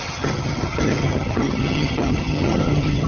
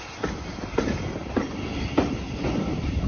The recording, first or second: second